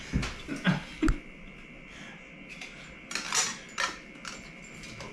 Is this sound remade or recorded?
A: recorded